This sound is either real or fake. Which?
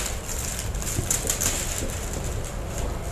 fake